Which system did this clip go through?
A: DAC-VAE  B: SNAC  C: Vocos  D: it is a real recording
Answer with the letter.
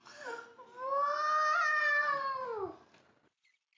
D